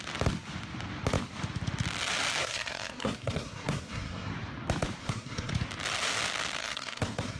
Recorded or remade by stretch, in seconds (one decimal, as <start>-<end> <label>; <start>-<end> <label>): 0.0-2.4 recorded; 2.4-4.3 remade; 4.3-5.0 recorded; 5.0-5.5 remade; 5.5-6.6 recorded; 6.6-7.4 remade